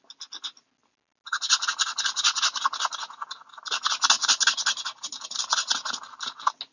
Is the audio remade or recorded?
recorded